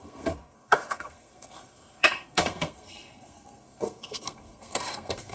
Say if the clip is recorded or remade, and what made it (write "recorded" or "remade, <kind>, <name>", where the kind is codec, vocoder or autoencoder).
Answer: remade, codec, SNAC